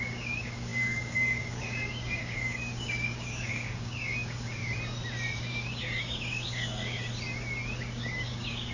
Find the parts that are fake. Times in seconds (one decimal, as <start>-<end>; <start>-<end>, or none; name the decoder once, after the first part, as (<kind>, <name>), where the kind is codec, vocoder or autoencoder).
0.0-4.6 (codec, DAC); 5.4-7.1; 7.8-8.7